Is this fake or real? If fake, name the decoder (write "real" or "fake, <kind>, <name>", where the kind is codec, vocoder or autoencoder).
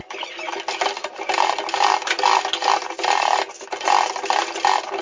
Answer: real